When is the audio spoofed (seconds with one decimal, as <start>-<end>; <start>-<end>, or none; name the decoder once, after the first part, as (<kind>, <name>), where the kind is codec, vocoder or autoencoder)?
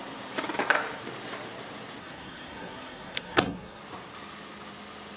2.0-3.8 (codec, SNAC)